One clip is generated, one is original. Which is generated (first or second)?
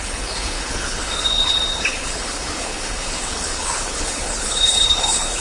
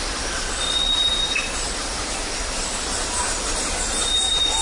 first